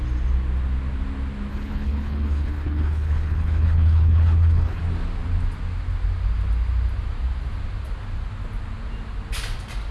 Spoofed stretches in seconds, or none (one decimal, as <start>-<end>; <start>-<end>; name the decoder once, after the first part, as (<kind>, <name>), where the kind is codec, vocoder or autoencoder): 1.5-4.8 (codec, HILCodec)